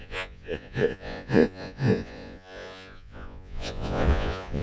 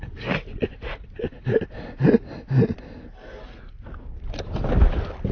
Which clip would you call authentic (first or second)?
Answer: second